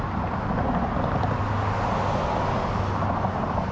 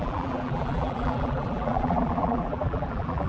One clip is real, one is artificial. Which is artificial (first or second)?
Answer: second